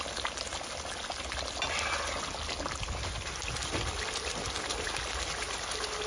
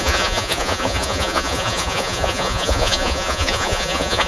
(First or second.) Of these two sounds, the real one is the first